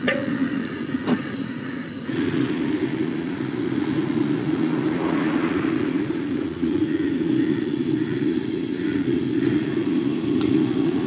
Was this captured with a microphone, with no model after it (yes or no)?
no